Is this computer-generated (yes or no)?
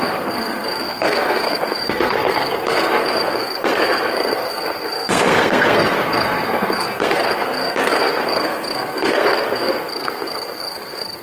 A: yes